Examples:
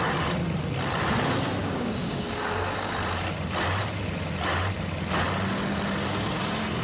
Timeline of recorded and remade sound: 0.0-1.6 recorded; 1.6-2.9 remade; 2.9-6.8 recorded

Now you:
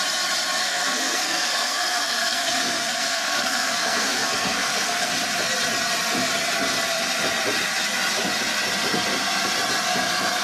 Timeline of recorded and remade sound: 0.0-0.6 recorded; 0.6-5.1 remade; 5.1-10.4 recorded

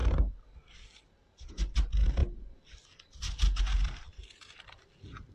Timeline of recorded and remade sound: 0.0-1.5 remade; 1.5-5.3 recorded